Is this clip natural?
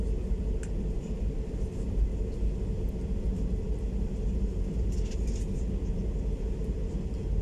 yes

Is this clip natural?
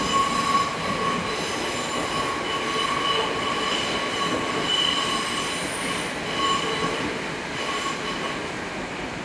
yes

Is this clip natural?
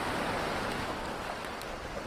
yes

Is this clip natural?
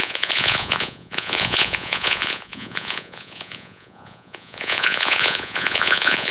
no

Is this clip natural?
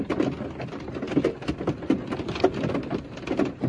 yes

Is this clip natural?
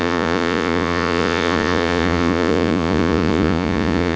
no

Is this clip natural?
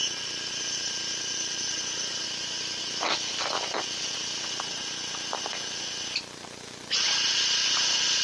yes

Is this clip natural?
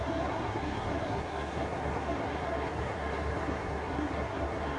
no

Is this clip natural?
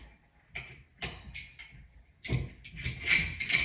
yes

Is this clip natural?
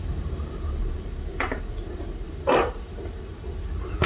no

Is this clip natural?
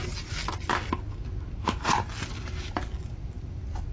yes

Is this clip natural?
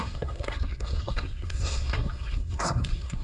no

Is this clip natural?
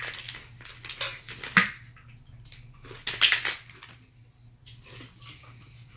yes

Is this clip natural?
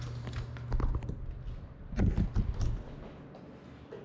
yes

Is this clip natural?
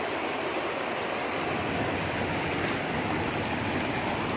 yes